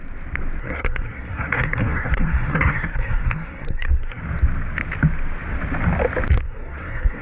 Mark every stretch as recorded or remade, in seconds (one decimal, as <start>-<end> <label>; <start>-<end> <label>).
0.0-0.6 recorded; 0.6-4.2 remade; 4.2-6.3 recorded; 6.3-7.2 remade